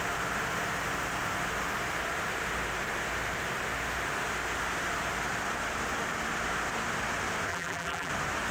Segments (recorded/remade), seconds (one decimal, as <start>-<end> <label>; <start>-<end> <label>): 0.0-7.5 recorded; 7.5-8.1 remade; 8.1-8.5 recorded